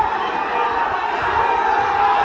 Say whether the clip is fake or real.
real